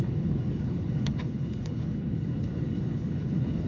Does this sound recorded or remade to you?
remade